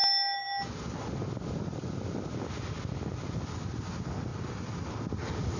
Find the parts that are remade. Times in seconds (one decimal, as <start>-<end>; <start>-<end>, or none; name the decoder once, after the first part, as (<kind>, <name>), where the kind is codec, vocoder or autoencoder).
4.3-4.9 (vocoder, BigVGAN v2)